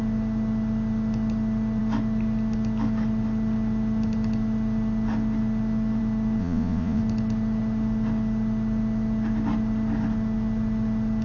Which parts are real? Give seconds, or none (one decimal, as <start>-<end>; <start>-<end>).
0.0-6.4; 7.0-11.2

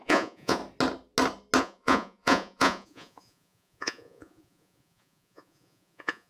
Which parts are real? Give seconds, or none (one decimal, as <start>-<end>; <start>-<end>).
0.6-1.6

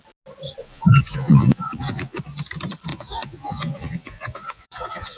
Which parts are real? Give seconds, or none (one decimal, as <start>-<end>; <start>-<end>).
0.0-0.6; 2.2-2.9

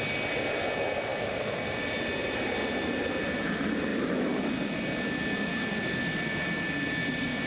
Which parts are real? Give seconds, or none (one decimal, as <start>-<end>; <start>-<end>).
0.0-7.5

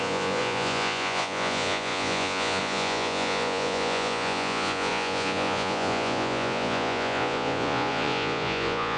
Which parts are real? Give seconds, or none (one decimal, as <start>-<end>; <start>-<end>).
none